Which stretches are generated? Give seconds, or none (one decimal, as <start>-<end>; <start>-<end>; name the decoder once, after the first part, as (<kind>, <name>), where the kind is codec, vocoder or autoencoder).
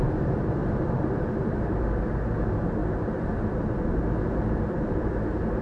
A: 0.0-2.8 (vocoder, BigVGAN v2); 4.5-5.6